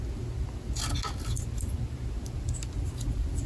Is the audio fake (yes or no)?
no